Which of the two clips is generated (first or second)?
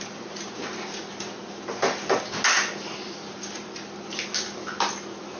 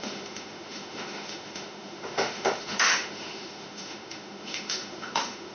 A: second